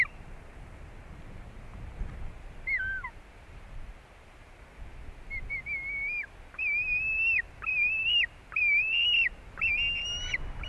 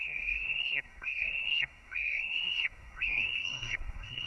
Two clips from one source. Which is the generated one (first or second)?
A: second